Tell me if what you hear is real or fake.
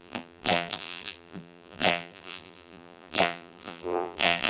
fake